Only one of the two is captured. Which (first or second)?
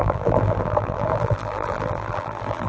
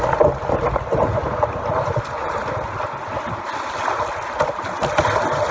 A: second